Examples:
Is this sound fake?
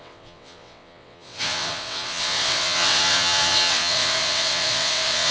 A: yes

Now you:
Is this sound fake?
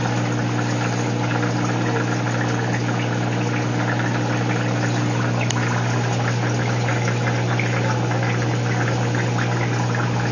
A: no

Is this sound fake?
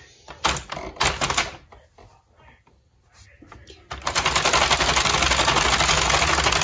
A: no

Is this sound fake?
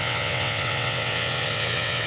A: yes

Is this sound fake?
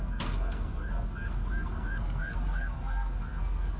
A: yes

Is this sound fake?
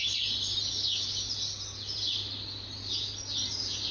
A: no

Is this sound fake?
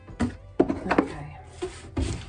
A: no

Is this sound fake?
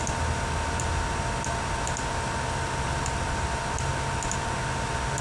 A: no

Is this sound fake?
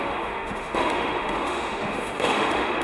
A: yes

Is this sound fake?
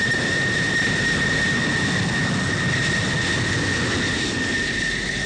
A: no